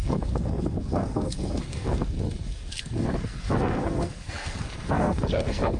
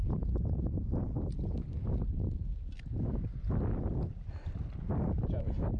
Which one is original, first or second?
second